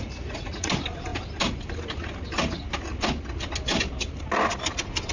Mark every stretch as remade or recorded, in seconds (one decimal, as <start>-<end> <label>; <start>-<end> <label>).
0.0-0.7 remade; 0.7-5.1 recorded